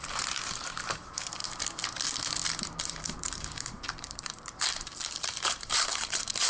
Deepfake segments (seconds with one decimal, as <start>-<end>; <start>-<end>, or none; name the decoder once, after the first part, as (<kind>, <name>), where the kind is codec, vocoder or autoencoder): 0.0-1.4 (vocoder, BigVGAN v2); 2.8-6.5